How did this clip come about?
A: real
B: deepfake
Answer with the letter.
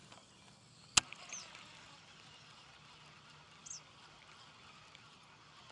A